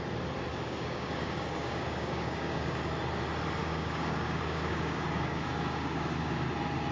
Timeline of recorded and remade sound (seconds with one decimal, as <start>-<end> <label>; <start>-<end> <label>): 0.0-0.5 recorded; 0.5-2.9 remade; 2.9-3.6 recorded; 3.6-6.5 remade; 6.5-6.9 recorded

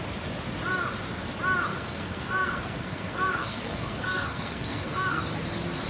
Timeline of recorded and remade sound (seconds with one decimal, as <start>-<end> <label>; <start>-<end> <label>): 0.0-1.7 recorded; 1.7-5.2 remade; 5.2-5.9 recorded

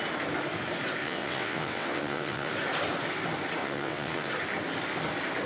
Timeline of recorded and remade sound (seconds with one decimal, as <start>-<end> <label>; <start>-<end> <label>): 0.0-1.0 recorded; 1.0-2.5 remade; 2.5-3.6 recorded; 3.6-4.3 remade; 4.3-5.5 recorded

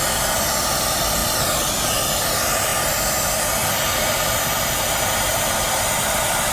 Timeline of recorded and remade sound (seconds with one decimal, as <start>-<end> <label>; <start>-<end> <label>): 0.0-1.2 recorded; 1.2-2.0 remade; 2.0-2.7 recorded; 2.7-3.5 remade; 3.5-6.5 recorded

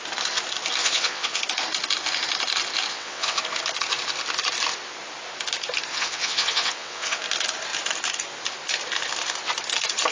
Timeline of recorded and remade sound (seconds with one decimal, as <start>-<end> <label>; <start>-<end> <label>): 0.0-0.8 recorded; 0.8-1.4 remade; 1.4-2.9 recorded; 2.9-3.4 remade; 3.4-5.9 recorded; 5.9-7.2 remade; 7.2-10.1 recorded

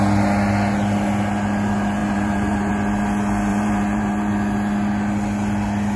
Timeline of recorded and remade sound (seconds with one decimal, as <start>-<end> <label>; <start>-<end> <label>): 0.0-2.0 recorded; 2.0-2.7 remade; 2.7-3.5 recorded; 3.5-4.3 remade; 4.3-6.0 recorded